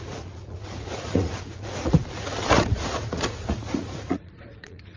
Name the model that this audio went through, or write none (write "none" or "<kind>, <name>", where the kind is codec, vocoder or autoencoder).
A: vocoder, Vocos